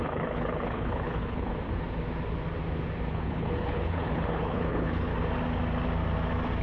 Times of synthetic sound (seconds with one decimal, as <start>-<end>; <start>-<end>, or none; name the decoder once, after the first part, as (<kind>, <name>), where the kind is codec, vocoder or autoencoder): 0.0-1.5 (codec, HILCodec); 3.1-5.1